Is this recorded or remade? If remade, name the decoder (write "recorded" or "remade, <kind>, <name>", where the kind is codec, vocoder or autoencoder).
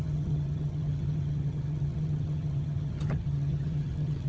remade, vocoder, HiFi-GAN